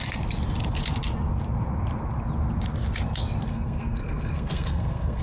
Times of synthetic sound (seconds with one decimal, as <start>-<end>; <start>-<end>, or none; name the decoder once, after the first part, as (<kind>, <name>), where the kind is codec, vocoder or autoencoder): 3.5-5.2 (codec, SNAC)